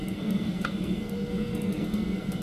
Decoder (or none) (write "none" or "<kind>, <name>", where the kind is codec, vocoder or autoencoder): codec, SNAC